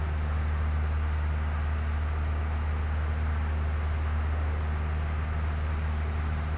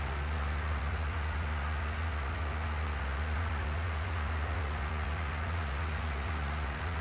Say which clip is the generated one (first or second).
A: second